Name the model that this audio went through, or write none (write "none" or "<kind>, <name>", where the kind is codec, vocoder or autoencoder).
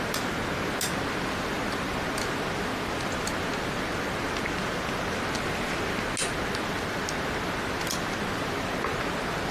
none